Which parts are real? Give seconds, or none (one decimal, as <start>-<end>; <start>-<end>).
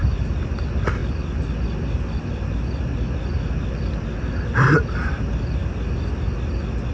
0.0-6.9